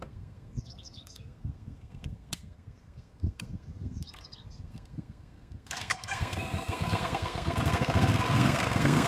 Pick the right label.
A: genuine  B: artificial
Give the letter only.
B